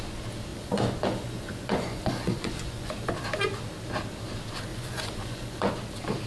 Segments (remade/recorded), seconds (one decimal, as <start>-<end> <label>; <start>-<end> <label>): 0.0-0.5 recorded; 0.5-2.9 remade; 2.9-4.7 recorded; 4.7-5.7 remade; 5.7-6.3 recorded